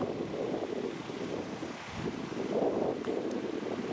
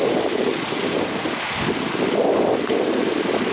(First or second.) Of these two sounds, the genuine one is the second